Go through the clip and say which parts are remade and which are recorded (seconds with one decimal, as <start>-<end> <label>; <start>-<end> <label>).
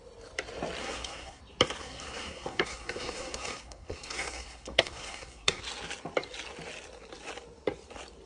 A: 0.0-0.8 recorded; 0.8-1.4 remade; 1.4-1.8 recorded; 1.8-5.6 remade; 5.6-8.3 recorded